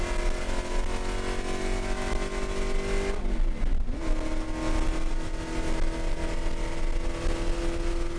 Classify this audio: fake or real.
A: real